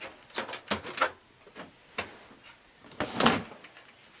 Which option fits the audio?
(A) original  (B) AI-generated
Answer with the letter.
A